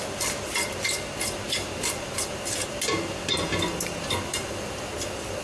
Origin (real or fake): real